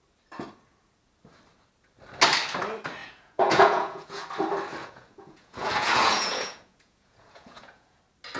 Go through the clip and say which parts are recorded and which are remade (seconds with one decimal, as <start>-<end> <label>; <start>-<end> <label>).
0.0-3.0 recorded; 3.0-4.2 remade; 4.2-4.8 recorded; 4.8-8.0 remade; 8.0-8.4 recorded